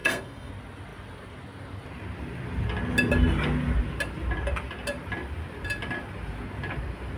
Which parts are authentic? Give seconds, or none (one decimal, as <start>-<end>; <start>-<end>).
0.5-7.2